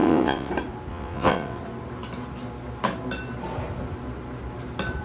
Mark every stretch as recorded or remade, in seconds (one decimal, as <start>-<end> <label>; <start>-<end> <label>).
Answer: 0.0-0.5 remade; 0.5-0.9 recorded; 0.9-1.6 remade; 1.6-5.0 recorded